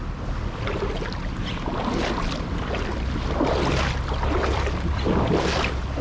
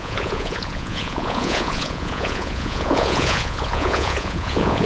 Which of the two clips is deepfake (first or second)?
second